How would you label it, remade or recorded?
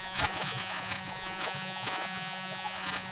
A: remade